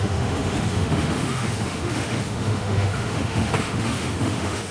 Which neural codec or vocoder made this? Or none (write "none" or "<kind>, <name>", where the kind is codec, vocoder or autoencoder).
autoencoder, DAC-VAE